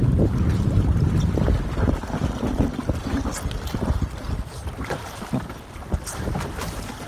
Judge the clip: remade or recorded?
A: recorded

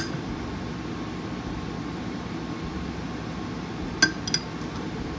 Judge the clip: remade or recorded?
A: recorded